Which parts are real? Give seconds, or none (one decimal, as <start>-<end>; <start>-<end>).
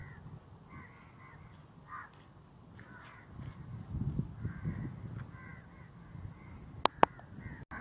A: 0.0-7.8